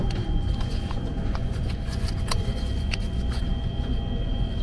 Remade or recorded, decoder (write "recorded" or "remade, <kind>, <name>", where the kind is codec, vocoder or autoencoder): remade, vocoder, Vocos